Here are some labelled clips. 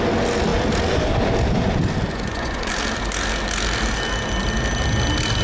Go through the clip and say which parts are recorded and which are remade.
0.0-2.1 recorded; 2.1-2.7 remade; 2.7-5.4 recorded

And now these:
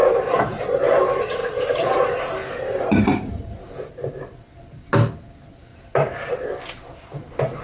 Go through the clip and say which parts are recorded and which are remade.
0.0-0.6 remade; 0.6-1.4 recorded; 1.4-4.1 remade; 4.1-7.6 recorded

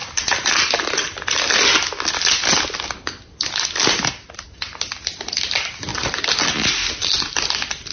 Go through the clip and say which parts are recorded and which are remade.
0.0-7.9 recorded

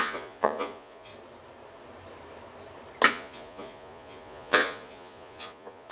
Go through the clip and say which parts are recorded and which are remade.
0.0-1.1 remade; 1.1-3.1 recorded; 3.1-5.9 remade